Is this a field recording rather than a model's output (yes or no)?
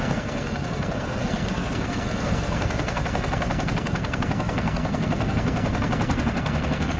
no